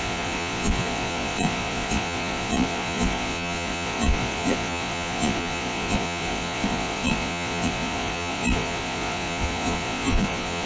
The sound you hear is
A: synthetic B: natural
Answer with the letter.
A